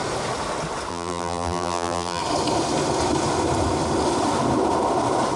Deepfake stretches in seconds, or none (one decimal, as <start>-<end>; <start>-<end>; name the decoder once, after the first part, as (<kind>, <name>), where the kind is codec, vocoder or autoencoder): 0.9-2.2 (vocoder, BigVGAN v2)